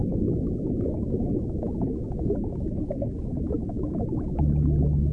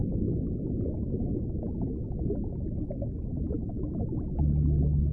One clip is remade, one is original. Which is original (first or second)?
second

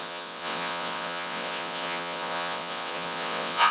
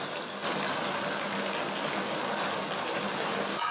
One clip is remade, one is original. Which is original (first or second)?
second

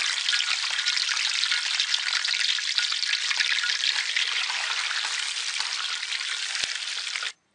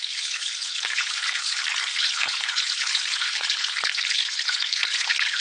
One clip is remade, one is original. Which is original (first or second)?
first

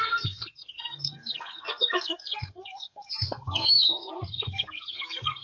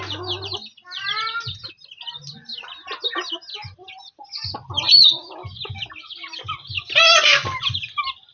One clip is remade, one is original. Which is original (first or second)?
second